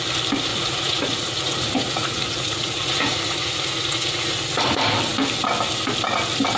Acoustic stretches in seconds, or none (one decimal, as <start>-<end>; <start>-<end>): 0.0-0.5; 4.3-6.6